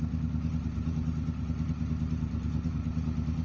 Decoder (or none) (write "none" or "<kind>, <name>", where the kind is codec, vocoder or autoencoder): none